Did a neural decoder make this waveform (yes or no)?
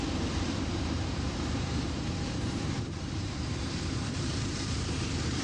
yes